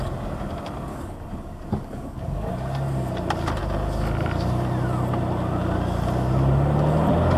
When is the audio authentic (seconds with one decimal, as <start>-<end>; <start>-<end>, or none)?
0.0-0.9; 2.5-7.4